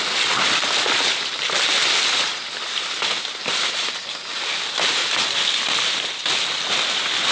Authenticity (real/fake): fake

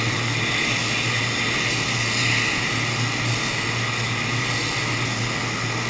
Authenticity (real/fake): real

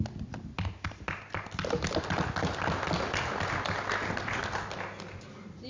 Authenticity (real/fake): real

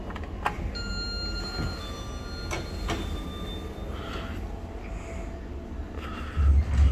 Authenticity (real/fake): real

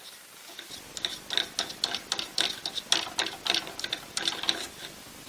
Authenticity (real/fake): real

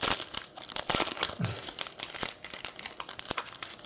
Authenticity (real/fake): fake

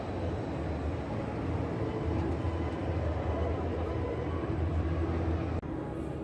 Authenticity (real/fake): real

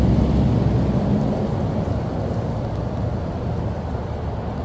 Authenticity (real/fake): real